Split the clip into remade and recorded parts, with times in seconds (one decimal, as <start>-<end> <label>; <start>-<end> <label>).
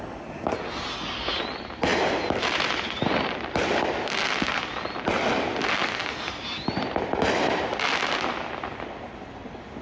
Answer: 0.0-1.9 recorded; 1.9-4.2 remade; 4.2-9.8 recorded